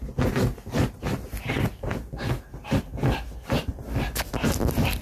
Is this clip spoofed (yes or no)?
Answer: no